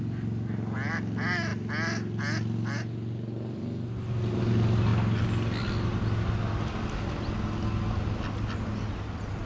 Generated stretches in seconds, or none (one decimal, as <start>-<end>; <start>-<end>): none